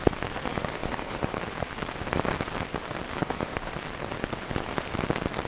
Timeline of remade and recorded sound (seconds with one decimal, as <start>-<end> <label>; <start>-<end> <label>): 0.0-0.5 recorded; 0.5-1.4 remade; 1.4-3.2 recorded; 3.2-3.7 remade; 3.7-5.5 recorded